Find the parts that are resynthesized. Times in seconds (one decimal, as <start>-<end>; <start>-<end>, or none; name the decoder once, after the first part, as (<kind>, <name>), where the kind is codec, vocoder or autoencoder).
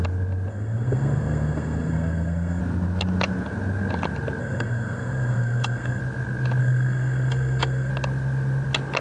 0.5-2.6 (codec, SNAC); 4.4-6.0; 6.6-7.9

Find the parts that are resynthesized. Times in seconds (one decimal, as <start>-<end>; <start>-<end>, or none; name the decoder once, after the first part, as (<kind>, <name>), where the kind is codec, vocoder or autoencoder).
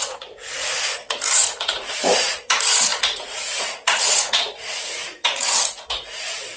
0.0-6.6 (vocoder, Vocos)